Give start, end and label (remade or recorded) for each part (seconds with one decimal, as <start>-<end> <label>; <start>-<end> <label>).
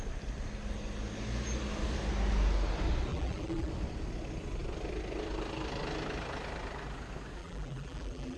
0.0-3.1 recorded; 3.1-3.7 remade; 3.7-7.4 recorded; 7.4-8.4 remade